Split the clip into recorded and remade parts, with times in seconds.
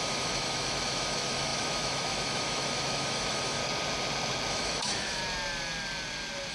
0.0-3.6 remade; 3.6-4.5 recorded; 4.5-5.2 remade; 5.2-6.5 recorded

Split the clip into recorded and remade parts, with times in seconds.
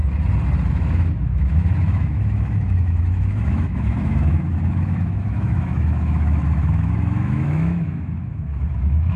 0.0-0.7 recorded; 0.7-9.2 remade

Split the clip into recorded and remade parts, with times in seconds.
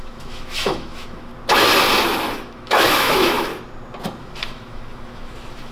0.0-1.3 remade; 1.3-2.3 recorded; 2.3-3.5 remade; 3.5-4.2 recorded; 4.2-5.7 remade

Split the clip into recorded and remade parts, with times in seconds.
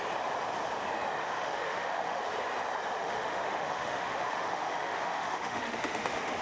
0.0-1.2 recorded; 1.2-2.2 remade; 2.2-3.0 recorded; 3.0-6.4 remade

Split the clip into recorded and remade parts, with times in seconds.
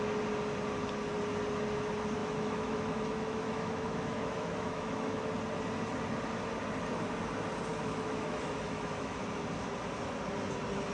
0.0-2.2 recorded; 2.2-5.3 remade; 5.3-7.7 recorded; 7.7-9.2 remade; 9.2-10.9 recorded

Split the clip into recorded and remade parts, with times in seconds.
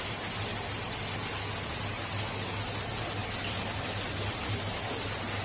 0.0-5.4 recorded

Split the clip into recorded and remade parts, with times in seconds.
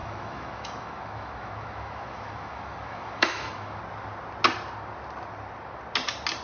0.0-3.8 remade; 3.8-6.4 recorded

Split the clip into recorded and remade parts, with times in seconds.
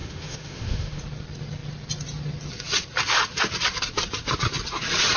0.0-1.0 remade; 1.0-5.2 recorded